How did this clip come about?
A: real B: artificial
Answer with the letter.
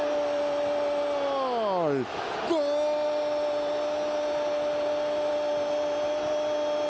A